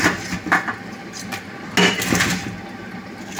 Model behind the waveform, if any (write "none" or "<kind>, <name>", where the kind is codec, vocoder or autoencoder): none